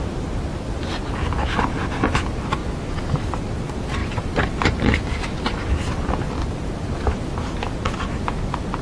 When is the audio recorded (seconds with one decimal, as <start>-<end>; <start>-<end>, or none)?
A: 0.0-4.0; 5.0-8.8